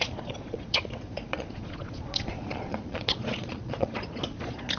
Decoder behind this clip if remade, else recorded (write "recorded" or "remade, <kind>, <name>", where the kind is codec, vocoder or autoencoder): remade, vocoder, Vocos